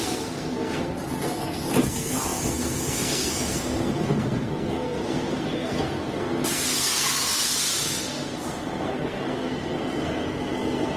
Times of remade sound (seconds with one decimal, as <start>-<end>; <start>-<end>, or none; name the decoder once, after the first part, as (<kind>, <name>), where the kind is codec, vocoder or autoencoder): 0.0-11.0 (codec, SNAC)